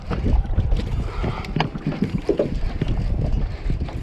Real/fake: real